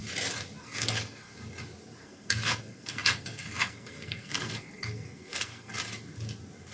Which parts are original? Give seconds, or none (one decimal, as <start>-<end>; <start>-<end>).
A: 0.0-0.6; 1.3-2.0; 5.7-6.7